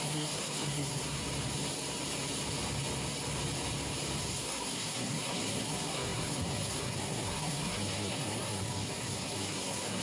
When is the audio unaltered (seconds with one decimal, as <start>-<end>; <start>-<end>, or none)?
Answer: 1.2-4.2